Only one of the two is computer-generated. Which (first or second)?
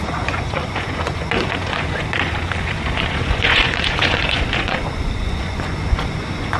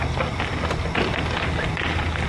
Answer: first